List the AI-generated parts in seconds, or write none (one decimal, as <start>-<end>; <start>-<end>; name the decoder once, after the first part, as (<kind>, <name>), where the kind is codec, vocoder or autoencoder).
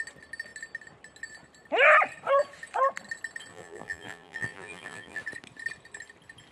3.5-5.2 (vocoder, BigVGAN v2)